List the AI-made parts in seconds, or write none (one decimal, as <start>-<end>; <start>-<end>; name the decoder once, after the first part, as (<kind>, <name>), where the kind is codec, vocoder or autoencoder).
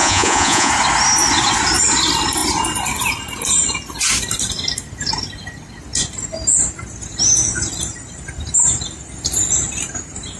0.0-0.7 (vocoder, Vocos)